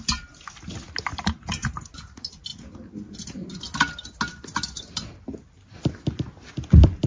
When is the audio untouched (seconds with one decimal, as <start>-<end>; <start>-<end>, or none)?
0.0-1.1; 1.7-7.1